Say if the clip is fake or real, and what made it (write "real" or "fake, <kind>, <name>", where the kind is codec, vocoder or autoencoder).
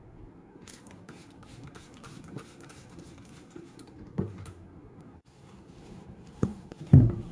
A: fake, codec, SNAC